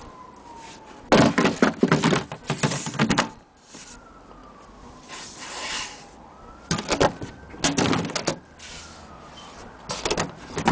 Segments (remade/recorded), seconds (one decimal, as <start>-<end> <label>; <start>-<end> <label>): 0.0-1.9 recorded; 1.9-3.8 remade; 3.8-4.4 recorded; 4.4-7.5 remade; 7.5-10.7 recorded